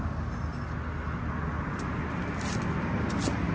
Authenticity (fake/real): real